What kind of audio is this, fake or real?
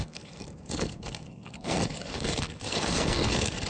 fake